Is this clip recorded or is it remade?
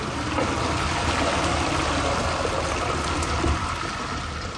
recorded